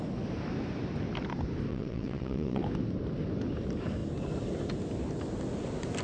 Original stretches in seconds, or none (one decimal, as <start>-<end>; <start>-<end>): 0.0-1.7; 2.6-6.0